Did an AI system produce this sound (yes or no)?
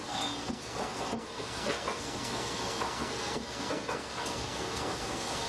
yes